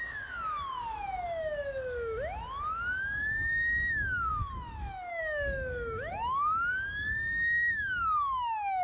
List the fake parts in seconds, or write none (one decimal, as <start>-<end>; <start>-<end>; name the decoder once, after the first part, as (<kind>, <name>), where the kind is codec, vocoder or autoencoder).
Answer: 0.0-8.8 (autoencoder, DAC-VAE)